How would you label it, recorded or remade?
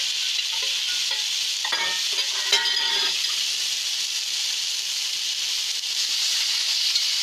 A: recorded